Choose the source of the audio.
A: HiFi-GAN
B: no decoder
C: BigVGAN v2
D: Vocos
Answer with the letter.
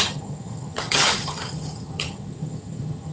A